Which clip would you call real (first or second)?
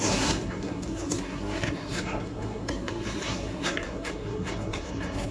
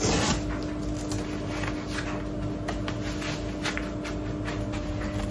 second